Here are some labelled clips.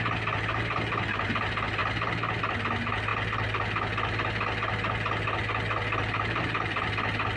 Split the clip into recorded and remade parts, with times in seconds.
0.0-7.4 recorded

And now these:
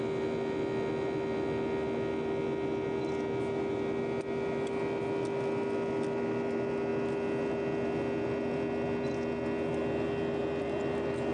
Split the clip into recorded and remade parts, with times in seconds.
0.0-11.3 recorded

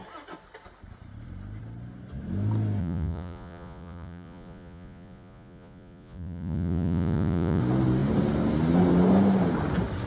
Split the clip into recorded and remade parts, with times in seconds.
0.0-2.8 recorded; 2.8-7.6 remade; 7.6-10.1 recorded

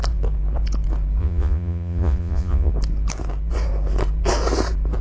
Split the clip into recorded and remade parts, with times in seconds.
0.0-1.2 recorded; 1.2-2.7 remade; 2.7-5.0 recorded

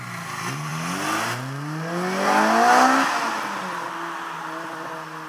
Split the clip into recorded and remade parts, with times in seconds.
0.0-5.3 recorded

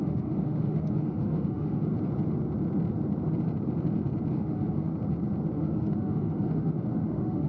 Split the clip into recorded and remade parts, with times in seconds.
0.0-1.9 remade; 1.9-4.3 recorded; 4.3-4.9 remade; 4.9-5.5 recorded; 5.5-7.5 remade

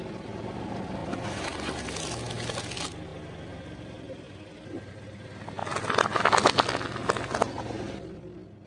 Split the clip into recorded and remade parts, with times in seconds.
0.0-1.0 recorded; 1.0-1.7 remade; 1.7-3.1 recorded; 3.1-4.9 remade; 4.9-5.6 recorded; 5.6-6.2 remade; 6.2-8.7 recorded